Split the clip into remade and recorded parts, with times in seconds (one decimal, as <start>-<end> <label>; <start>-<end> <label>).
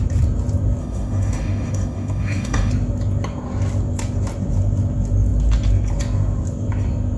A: 0.0-0.8 recorded; 0.8-2.7 remade; 2.7-7.2 recorded